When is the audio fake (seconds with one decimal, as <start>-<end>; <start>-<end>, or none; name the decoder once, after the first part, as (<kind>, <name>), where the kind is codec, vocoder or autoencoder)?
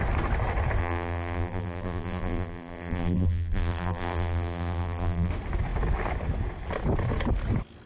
0.8-5.3 (vocoder, BigVGAN v2)